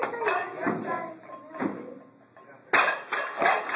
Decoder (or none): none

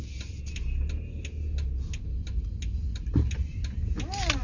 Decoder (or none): none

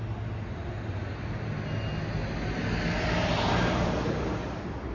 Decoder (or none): none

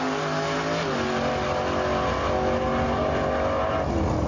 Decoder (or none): none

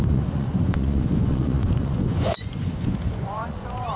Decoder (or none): vocoder, Vocos